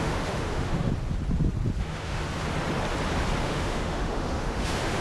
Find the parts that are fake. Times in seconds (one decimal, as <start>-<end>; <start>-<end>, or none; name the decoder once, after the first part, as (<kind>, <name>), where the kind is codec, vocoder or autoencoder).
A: 0.0-0.9 (autoencoder, DAC-VAE); 1.8-2.2; 3.4-5.0